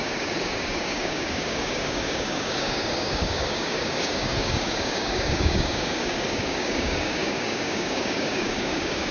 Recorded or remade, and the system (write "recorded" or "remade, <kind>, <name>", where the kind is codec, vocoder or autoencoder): remade, codec, DAC